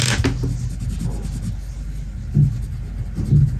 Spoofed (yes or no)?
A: no